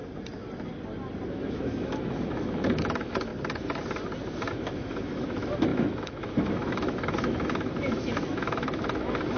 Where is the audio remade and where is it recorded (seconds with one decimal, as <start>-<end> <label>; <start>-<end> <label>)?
0.0-1.3 recorded; 1.3-3.3 remade; 3.3-4.5 recorded; 4.5-9.4 remade